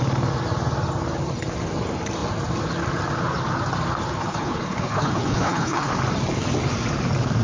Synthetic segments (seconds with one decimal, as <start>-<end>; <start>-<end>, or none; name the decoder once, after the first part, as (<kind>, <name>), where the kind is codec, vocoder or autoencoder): 4.2-5.9 (codec, HILCodec)